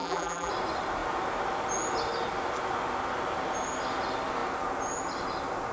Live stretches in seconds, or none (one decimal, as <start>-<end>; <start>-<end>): 0.5-5.7